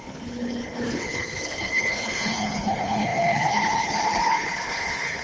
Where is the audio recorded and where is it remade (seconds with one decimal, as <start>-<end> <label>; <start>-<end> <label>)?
0.0-5.2 remade